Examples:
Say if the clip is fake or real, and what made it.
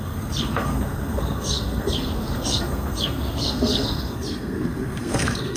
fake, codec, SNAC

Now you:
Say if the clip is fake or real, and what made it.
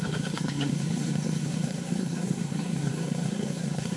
fake, codec, SNAC